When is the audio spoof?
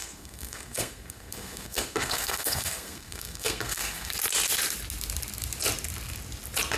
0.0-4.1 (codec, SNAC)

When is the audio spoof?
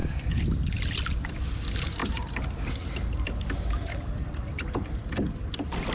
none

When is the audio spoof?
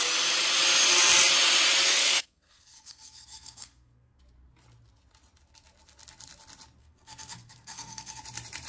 1.9-4.2 (codec, SNAC); 6.8-8.2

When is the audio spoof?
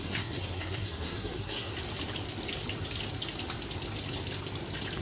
0.0-1.7 (codec, SNAC)